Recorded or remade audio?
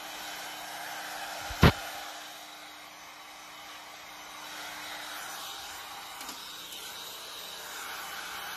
recorded